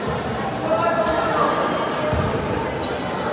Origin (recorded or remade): recorded